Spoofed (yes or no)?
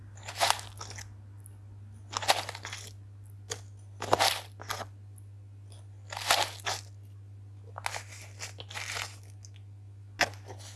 no